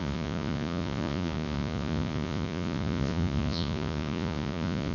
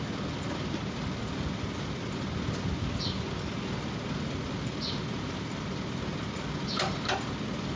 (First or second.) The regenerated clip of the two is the first